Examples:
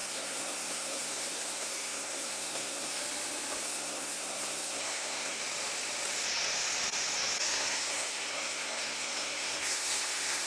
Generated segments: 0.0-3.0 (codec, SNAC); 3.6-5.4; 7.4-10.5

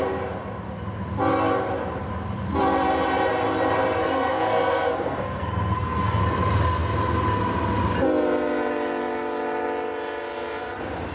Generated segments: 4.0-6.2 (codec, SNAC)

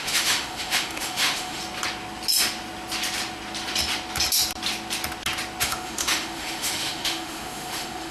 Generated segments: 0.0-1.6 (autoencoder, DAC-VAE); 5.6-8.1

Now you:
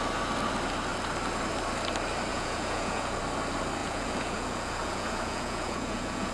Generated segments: 2.3-3.2 (vocoder, Vocos); 3.8-6.3